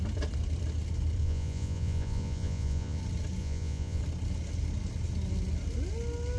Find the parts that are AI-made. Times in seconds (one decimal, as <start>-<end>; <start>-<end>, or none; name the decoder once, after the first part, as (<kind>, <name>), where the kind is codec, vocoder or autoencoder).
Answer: 1.2-3.0 (vocoder, Vocos); 3.4-4.0